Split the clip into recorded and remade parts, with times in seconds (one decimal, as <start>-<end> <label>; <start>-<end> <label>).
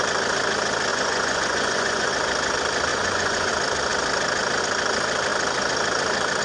0.0-0.9 recorded; 0.9-2.1 remade; 2.1-2.9 recorded; 2.9-3.5 remade; 3.5-6.4 recorded